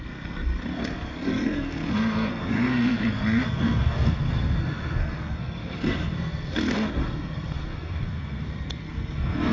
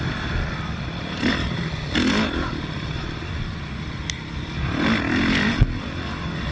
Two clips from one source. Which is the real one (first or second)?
second